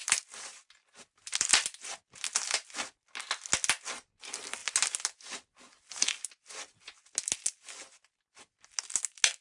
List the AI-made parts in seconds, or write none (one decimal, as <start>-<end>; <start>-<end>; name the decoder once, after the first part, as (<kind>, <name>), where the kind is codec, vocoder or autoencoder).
0.0-0.7 (vocoder, BigVGAN v2)